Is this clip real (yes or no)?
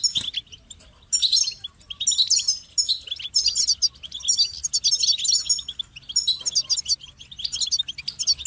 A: yes